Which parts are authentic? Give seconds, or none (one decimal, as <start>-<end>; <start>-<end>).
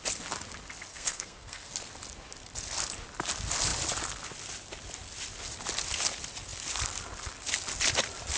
0.0-0.9; 1.7-8.4